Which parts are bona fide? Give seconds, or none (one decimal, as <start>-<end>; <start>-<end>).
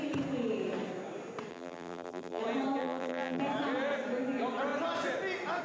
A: 0.0-1.5; 2.4-2.8; 3.4-5.6